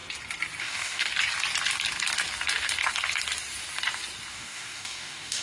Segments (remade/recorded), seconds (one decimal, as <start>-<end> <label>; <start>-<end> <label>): 0.0-0.6 recorded; 0.6-1.1 remade; 1.1-4.3 recorded; 4.3-5.4 remade